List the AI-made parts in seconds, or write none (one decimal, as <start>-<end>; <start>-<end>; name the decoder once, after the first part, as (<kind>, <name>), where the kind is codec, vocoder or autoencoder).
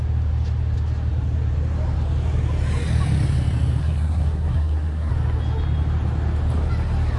3.8-5.1 (codec, SNAC)